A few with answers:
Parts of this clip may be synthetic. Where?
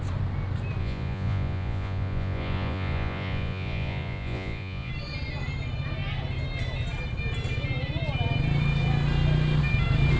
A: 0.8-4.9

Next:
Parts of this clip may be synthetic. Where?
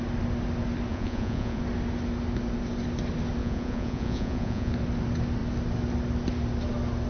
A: 0.9-1.6; 3.4-4.7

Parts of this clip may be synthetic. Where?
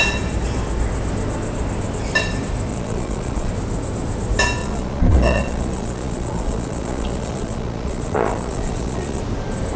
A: 2.7-3.5; 4.6-9.2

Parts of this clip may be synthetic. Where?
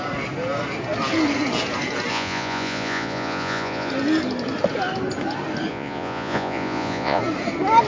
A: 2.1-3.9; 5.7-7.2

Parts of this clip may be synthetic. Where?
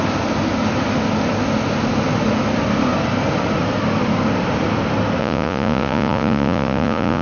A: 5.2-7.2